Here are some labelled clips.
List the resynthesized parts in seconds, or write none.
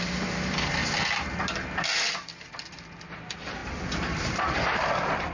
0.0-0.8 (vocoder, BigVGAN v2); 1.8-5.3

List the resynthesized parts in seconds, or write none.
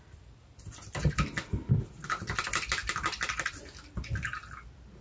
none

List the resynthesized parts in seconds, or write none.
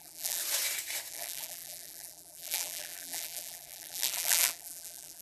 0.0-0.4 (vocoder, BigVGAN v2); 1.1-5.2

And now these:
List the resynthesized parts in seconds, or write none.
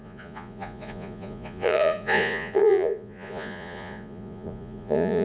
0.0-5.2 (vocoder, Vocos)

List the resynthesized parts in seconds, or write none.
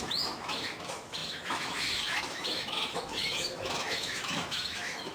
0.0-5.1 (autoencoder, DAC-VAE)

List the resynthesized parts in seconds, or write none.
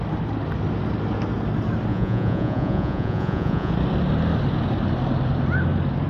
1.9-3.7 (vocoder, Vocos)